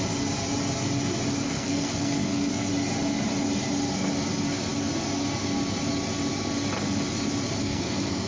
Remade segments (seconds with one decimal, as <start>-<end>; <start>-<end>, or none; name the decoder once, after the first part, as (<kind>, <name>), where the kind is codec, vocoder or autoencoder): 1.4-2.7 (codec, SNAC); 7.6-8.3